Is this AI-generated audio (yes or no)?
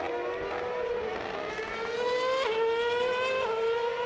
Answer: no